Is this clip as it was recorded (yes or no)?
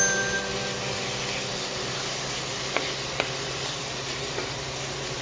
yes